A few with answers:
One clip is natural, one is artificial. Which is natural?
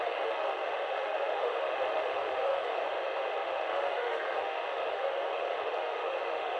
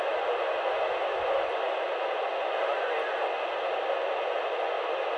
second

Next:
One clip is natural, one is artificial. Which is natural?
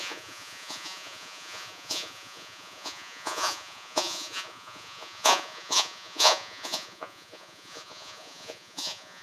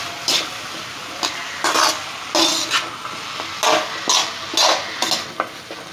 second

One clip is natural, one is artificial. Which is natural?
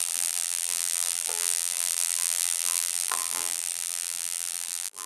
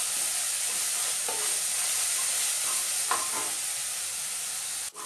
second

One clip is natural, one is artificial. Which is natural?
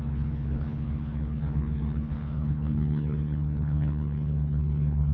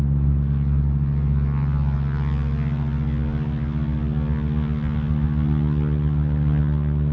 second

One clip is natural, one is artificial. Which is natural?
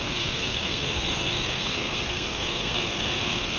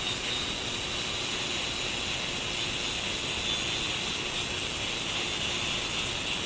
second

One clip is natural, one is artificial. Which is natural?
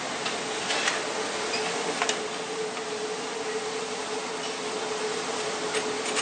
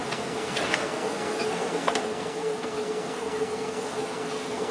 first